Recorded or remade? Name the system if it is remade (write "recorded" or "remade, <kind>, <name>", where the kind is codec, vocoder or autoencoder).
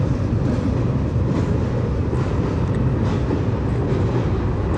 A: recorded